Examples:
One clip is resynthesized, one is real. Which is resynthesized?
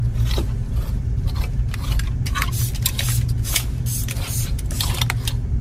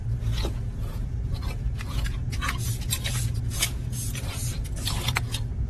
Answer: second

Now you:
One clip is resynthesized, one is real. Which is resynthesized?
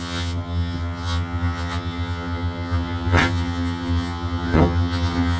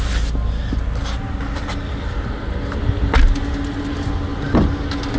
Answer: first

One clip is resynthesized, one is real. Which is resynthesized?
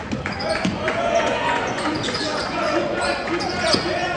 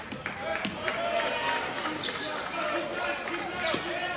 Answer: first